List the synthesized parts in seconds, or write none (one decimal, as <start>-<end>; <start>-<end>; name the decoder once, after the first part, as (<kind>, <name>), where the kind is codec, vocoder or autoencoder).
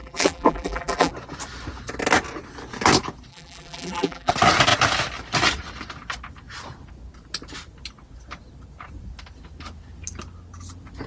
0.0-1.1 (vocoder, BigVGAN v2); 3.3-4.3